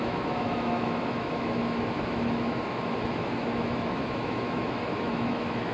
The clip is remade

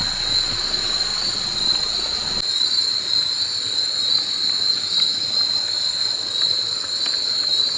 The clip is recorded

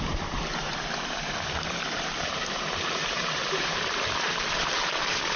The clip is remade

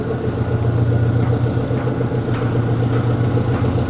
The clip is recorded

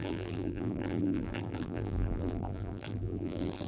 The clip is remade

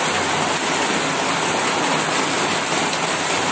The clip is recorded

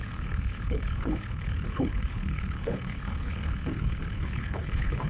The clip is remade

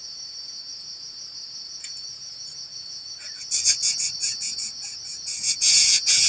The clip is remade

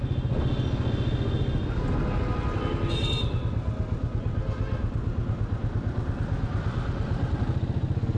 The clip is recorded